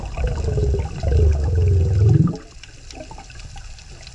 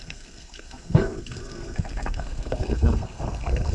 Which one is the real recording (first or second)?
first